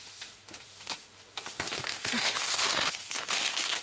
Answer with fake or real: fake